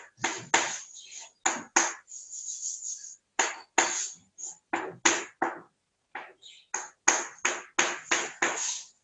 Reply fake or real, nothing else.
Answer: real